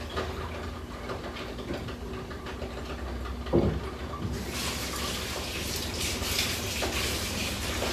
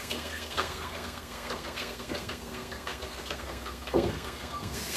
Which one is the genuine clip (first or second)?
first